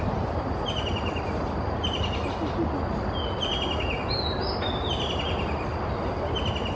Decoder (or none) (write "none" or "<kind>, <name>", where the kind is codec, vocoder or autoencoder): none